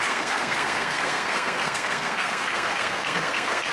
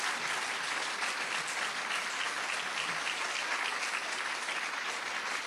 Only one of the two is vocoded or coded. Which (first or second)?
first